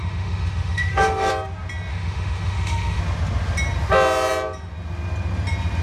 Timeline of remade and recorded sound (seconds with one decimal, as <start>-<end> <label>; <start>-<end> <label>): 0.0-1.3 remade; 1.3-1.9 recorded; 1.9-3.0 remade; 3.0-5.8 recorded